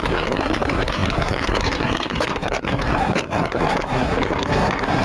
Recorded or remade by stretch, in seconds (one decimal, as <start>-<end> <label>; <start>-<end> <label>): 0.0-5.0 remade